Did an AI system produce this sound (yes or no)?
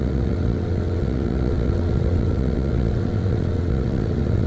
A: yes